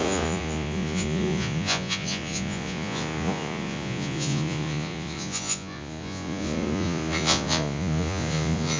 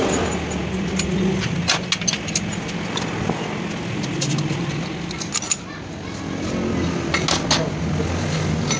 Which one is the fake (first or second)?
first